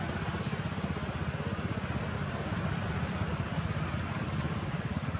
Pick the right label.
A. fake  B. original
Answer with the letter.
B